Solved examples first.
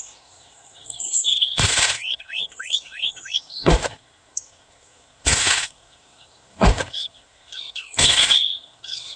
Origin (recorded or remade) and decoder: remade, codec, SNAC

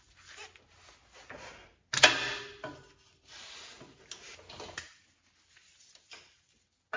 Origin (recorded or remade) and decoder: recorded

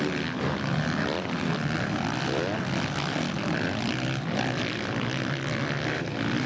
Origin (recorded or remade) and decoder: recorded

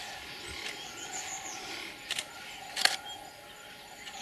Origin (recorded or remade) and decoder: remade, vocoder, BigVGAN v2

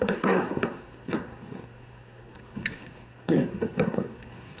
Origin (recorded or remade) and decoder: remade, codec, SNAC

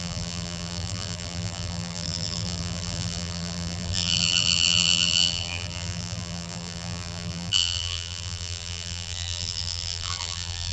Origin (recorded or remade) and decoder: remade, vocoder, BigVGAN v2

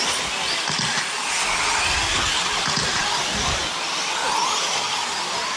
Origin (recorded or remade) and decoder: recorded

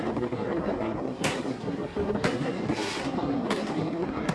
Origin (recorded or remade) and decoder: remade, codec, SNAC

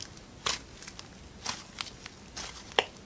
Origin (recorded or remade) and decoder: recorded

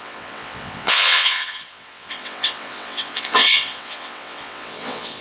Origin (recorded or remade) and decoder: remade, vocoder, WaveNeXt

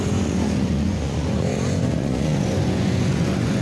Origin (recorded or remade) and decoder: remade, vocoder, Vocos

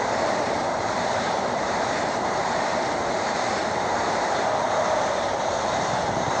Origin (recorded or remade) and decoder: remade, vocoder, BigVGAN v2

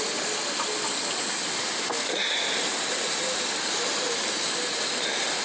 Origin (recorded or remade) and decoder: recorded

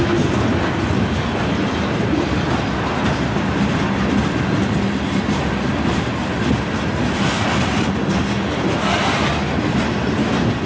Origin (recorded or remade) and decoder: recorded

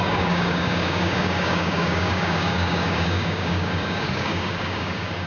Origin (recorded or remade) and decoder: remade, codec, DAC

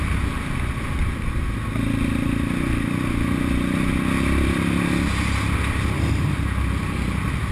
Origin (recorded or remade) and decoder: recorded